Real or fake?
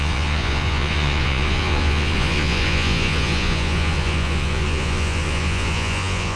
fake